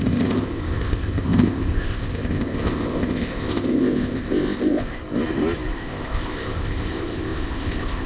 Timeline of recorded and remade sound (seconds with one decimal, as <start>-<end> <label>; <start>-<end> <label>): 0.0-5.0 remade; 5.0-5.7 recorded; 5.7-8.1 remade